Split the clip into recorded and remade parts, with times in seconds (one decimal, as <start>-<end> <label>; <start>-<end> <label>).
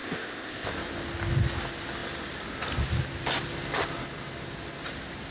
0.0-0.7 remade; 0.7-5.3 recorded